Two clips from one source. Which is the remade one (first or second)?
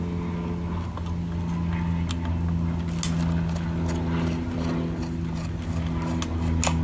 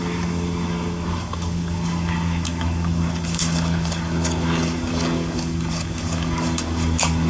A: second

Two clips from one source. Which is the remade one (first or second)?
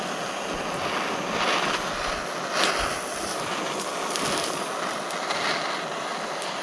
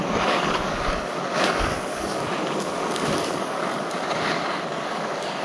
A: second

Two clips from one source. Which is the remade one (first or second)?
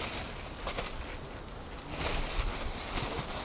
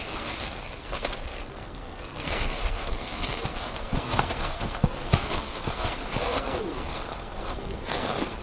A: second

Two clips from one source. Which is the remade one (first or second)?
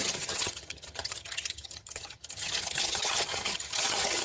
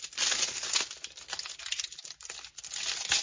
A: first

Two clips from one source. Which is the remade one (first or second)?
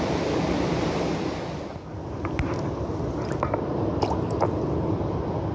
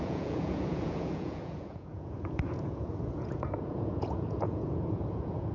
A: second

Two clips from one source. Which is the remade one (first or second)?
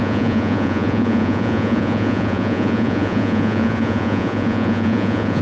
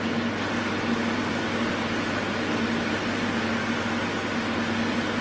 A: first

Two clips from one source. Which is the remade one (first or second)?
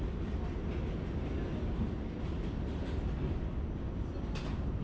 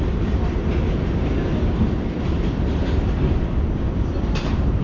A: second